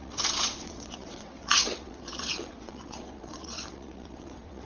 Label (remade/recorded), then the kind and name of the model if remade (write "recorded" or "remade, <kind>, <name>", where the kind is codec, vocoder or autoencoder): remade, vocoder, WaveNeXt